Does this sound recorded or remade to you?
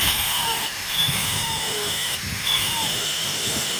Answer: remade